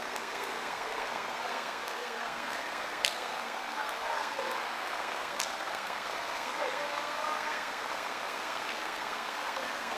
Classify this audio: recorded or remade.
remade